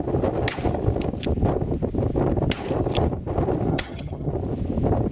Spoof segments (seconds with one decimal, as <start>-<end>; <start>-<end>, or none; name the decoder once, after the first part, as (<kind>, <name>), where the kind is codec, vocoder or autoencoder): 3.7-4.3 (vocoder, HiFi-GAN)